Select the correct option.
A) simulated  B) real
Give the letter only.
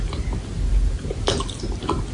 B